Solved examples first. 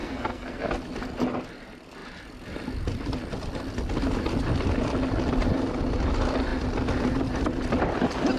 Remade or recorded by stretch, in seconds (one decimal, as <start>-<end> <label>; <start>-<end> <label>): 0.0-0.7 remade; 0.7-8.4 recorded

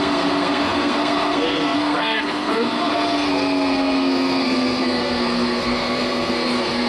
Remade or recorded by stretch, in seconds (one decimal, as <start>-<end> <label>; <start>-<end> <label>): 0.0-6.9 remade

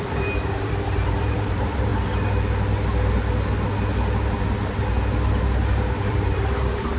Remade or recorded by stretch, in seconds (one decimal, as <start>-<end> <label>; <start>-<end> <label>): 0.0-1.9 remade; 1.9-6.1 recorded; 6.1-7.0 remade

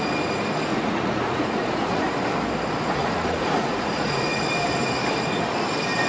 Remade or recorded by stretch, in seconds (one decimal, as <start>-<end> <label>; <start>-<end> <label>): 0.0-0.7 recorded; 0.7-2.1 remade; 2.1-3.0 recorded; 3.0-4.4 remade; 4.4-6.1 recorded

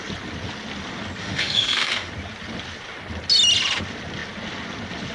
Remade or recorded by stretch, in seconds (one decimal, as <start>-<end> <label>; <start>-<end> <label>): 0.0-1.2 recorded; 1.2-2.1 remade; 2.1-5.1 recorded